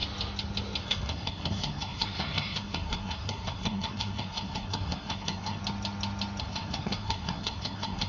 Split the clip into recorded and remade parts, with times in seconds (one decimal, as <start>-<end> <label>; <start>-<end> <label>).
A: 0.0-0.8 recorded; 0.8-5.6 remade; 5.6-6.4 recorded; 6.4-8.1 remade